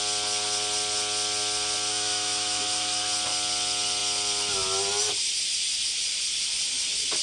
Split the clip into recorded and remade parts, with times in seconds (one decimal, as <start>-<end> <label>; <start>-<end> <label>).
0.0-1.9 recorded; 1.9-3.0 remade; 3.0-7.2 recorded